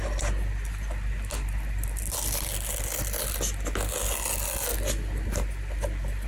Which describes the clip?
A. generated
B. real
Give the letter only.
B